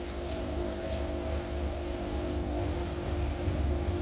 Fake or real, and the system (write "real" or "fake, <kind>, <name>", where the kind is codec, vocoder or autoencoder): fake, codec, DAC